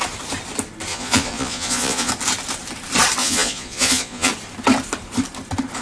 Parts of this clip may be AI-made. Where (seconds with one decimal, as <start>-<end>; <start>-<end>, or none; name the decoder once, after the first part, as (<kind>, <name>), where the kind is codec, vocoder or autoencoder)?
0.9-2.1 (vocoder, Vocos); 3.2-4.3